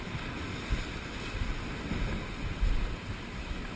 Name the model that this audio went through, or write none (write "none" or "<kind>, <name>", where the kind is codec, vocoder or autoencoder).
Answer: none